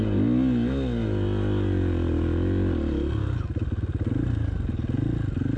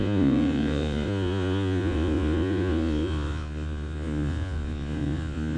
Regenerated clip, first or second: second